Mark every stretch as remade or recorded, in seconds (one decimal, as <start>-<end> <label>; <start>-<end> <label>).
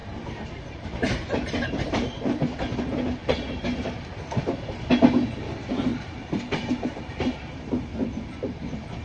0.0-2.3 remade; 2.3-3.2 recorded; 3.2-3.9 remade; 3.9-5.9 recorded; 5.9-7.7 remade; 7.7-9.0 recorded